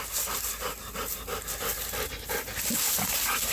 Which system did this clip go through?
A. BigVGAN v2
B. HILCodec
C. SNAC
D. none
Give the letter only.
D